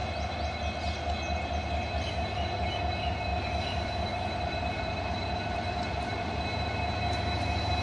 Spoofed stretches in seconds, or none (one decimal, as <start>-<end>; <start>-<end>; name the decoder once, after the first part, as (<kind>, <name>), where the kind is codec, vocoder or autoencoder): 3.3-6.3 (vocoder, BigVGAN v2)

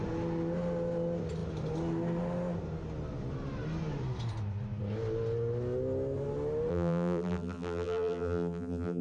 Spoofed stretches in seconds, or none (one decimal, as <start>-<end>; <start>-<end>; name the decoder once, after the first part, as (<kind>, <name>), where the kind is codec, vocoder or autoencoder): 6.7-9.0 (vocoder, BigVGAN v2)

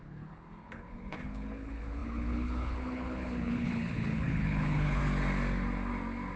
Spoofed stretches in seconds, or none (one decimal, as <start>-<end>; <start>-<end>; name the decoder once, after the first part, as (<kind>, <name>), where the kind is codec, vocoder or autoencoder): 0.0-5.0 (codec, HILCodec)

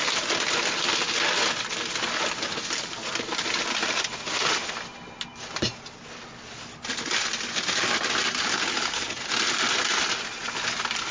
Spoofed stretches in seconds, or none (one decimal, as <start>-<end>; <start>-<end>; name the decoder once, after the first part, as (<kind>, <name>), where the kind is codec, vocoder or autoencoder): none